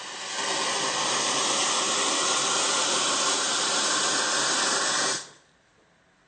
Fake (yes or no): no